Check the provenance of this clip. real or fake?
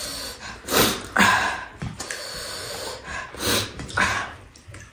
real